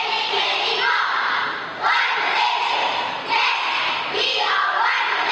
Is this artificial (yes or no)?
no